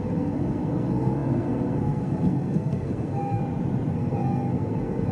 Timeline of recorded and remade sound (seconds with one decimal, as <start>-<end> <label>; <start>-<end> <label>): 0.0-3.4 remade; 3.4-3.9 recorded; 3.9-5.1 remade